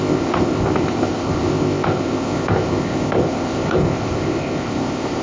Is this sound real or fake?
fake